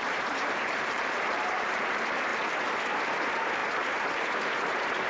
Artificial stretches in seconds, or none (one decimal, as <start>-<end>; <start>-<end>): 0.0-2.3; 3.2-5.1